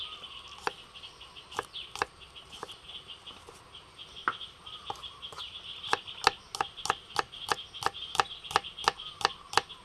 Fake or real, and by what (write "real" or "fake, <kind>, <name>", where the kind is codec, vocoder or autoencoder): real